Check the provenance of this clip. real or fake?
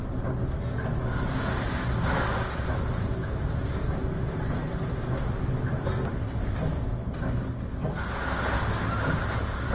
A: real